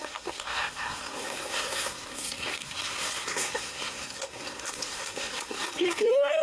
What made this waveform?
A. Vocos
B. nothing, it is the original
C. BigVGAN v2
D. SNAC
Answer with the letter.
D